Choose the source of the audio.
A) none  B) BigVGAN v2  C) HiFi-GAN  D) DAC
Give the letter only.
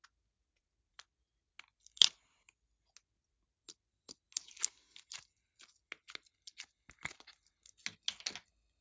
A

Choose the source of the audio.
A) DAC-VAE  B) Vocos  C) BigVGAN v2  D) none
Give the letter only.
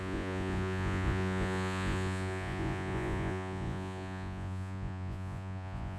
B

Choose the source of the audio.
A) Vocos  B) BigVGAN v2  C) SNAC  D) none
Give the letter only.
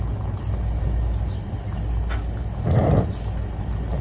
D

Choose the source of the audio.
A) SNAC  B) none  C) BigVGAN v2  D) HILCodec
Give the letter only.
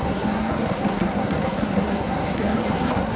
A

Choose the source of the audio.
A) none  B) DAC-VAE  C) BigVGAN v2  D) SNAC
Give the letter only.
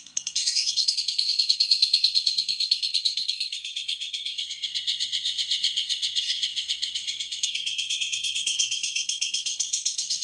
D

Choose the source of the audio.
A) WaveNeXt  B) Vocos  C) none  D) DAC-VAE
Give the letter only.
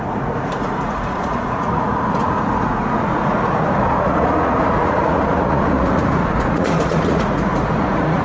B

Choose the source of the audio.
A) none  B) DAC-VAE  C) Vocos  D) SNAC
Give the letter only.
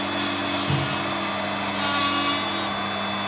A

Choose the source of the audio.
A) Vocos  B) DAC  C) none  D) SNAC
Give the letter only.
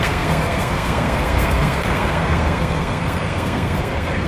D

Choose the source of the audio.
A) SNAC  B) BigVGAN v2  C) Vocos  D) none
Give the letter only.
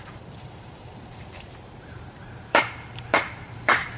B